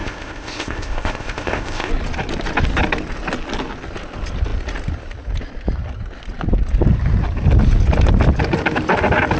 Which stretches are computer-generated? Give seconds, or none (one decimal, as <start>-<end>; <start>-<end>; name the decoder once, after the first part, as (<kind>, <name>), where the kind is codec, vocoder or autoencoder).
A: 0.0-1.9 (codec, ZipCodec)